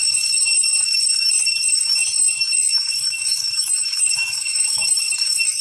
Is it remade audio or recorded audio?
remade